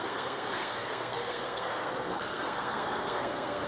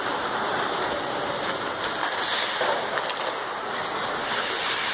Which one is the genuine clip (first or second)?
second